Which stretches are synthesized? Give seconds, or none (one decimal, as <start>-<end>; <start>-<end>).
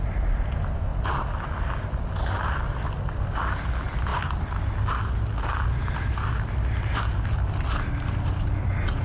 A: none